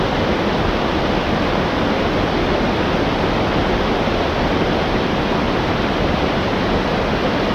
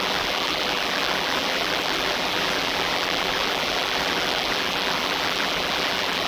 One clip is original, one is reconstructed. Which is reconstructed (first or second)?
second